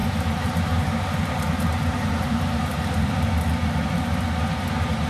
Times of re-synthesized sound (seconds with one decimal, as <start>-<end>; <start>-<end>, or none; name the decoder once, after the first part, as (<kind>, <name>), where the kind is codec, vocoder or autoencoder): 0.0-3.1 (vocoder, BigVGAN v2)